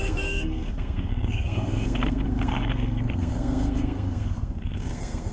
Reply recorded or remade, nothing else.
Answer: remade